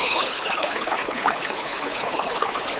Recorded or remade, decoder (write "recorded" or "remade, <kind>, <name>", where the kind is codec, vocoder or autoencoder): remade, codec, HILCodec